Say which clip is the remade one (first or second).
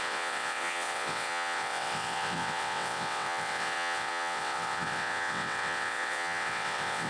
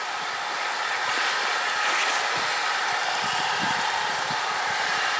first